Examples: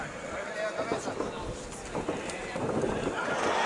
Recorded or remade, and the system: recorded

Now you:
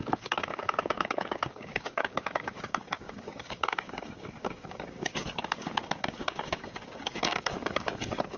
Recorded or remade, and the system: remade, codec, DAC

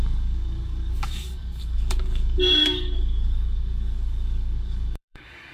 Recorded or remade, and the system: remade, codec, DAC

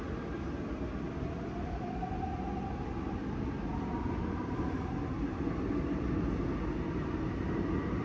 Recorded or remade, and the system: recorded